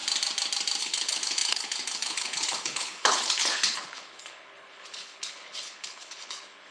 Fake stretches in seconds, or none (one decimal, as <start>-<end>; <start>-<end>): 0.8-6.7